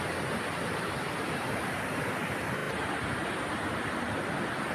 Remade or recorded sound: recorded